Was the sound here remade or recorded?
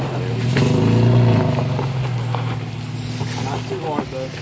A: recorded